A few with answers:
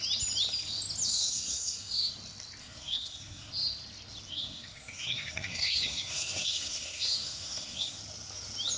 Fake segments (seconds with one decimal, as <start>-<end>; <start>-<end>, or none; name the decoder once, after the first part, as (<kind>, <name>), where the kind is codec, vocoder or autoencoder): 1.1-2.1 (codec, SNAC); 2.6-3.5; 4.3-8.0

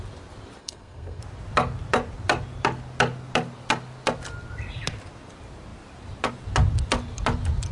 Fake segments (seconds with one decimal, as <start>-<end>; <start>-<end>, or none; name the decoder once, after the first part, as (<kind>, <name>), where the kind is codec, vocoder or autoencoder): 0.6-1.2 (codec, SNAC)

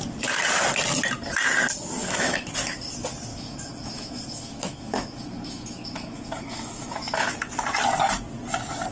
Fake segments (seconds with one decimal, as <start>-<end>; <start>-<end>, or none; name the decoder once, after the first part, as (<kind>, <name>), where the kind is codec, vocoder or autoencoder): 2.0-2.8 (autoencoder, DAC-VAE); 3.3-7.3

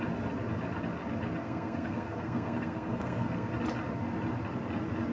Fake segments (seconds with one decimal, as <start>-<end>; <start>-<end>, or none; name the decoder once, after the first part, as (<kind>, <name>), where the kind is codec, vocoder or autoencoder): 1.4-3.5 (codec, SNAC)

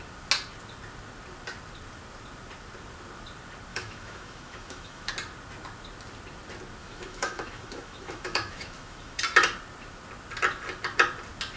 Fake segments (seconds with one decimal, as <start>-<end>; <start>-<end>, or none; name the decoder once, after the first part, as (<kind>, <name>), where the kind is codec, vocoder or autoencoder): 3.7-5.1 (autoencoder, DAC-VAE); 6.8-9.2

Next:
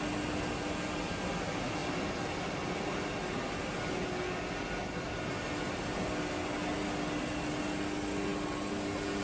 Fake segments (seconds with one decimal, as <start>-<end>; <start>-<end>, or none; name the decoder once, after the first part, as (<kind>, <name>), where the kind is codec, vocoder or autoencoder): none

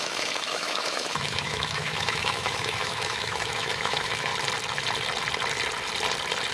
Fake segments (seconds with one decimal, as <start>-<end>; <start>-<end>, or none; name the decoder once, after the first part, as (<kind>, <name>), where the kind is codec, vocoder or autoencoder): 0.0-4.3 (autoencoder, DAC-VAE)